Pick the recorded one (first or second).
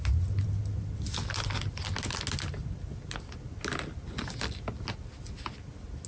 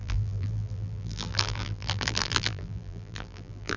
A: first